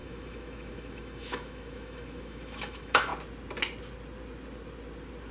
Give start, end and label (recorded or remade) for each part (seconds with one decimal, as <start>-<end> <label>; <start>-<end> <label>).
0.0-3.1 remade; 3.1-5.3 recorded